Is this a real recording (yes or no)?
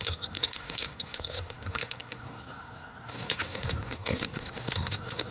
no